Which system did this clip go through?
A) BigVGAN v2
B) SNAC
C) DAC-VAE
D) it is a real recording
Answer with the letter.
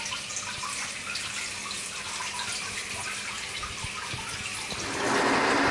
A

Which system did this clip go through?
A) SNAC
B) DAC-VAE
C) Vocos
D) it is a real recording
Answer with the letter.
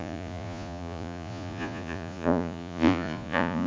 C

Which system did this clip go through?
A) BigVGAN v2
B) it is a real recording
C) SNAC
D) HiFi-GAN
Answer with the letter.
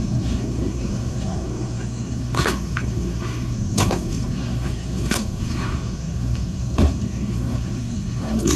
C